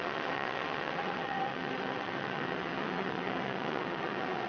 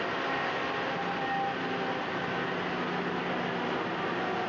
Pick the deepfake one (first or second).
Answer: first